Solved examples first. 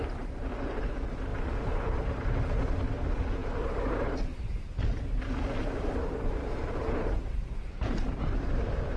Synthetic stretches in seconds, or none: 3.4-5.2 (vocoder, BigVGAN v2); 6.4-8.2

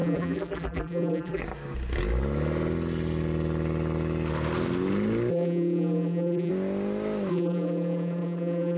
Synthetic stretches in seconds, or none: 0.0-1.4 (vocoder, BigVGAN v2); 5.3-6.5; 7.3-8.8